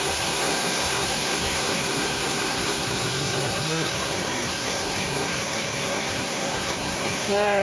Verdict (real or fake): fake